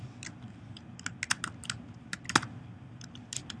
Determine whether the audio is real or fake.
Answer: real